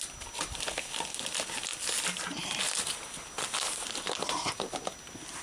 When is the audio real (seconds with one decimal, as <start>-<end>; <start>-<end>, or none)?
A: 0.0-5.4